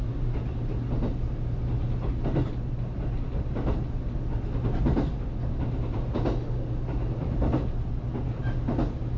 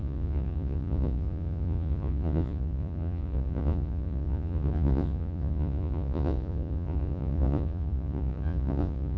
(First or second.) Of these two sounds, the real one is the first